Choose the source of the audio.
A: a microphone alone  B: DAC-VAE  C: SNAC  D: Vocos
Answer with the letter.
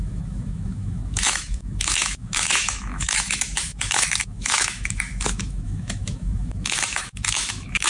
B